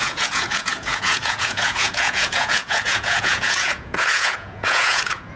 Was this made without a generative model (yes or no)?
no